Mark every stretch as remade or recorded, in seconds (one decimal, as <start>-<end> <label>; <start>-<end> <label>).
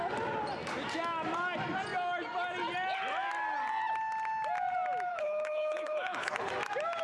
0.0-5.1 recorded; 5.1-6.5 remade; 6.5-7.0 recorded